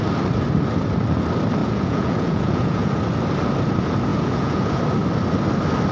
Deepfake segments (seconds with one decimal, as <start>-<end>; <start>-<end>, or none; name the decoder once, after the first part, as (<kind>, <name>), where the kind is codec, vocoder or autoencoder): 1.6-2.9 (vocoder, Vocos); 4.1-4.8

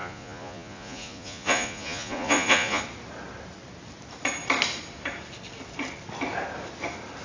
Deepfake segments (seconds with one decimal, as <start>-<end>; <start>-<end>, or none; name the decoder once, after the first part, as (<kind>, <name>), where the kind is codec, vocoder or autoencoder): 0.0-2.8 (vocoder, Vocos)

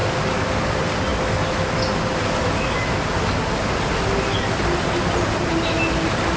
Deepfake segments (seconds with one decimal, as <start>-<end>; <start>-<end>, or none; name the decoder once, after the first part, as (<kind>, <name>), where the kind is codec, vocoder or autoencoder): none

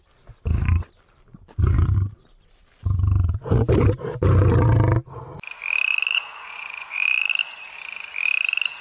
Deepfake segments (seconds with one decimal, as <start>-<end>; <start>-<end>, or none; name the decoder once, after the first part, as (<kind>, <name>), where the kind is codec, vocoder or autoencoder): 5.9-7.3 (vocoder, Vocos)